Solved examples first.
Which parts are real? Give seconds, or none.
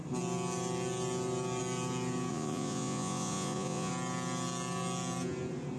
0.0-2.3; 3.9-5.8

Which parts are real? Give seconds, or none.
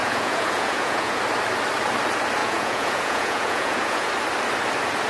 1.2-2.4; 4.1-5.1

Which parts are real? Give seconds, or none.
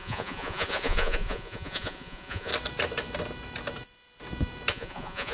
2.5-4.7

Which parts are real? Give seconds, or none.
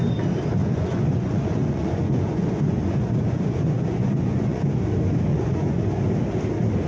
0.0-0.6; 4.7-5.3; 5.8-6.9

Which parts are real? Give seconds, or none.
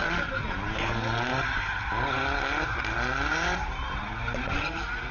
0.0-5.1